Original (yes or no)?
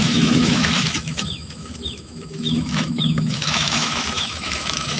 no